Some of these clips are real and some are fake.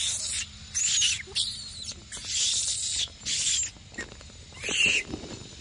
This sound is real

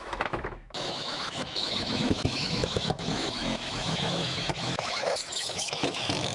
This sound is fake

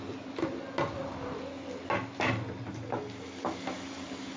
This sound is real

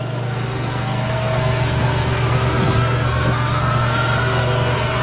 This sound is fake